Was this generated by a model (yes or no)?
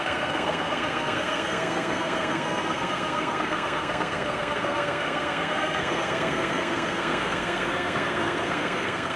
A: yes